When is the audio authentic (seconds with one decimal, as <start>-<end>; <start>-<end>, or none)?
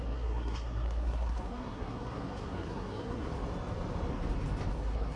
3.3-4.7